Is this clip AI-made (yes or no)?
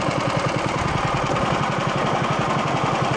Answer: no